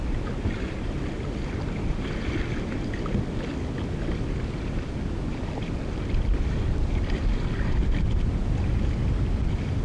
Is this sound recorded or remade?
recorded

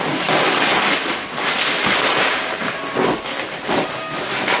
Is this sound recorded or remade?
recorded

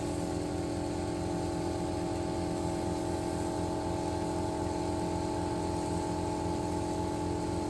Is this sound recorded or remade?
recorded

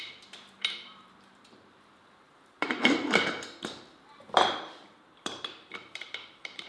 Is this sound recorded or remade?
remade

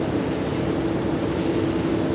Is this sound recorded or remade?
recorded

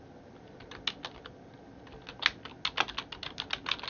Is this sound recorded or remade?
recorded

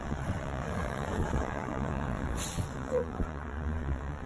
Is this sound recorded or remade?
remade